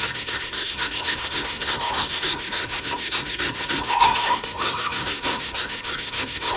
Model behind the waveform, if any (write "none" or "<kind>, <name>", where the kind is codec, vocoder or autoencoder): codec, SNAC